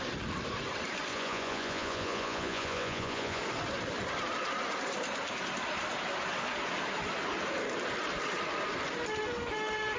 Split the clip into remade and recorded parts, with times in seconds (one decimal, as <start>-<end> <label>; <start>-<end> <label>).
0.0-1.1 recorded; 1.1-3.4 remade; 3.4-10.0 recorded